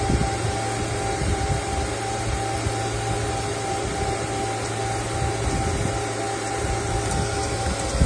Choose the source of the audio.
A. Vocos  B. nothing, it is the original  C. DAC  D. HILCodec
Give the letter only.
B